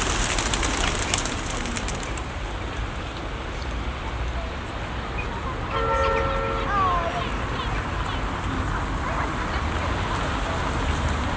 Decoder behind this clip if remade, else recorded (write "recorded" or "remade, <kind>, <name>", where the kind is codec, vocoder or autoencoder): recorded